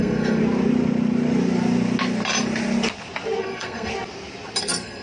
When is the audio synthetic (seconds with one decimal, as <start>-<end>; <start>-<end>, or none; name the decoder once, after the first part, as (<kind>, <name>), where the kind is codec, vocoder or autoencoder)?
0.0-0.4 (codec, SNAC); 3.4-3.9; 4.6-5.0